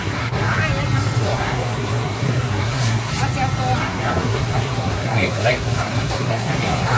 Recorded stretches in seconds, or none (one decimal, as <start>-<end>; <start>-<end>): 0.6-1.2; 3.1-3.8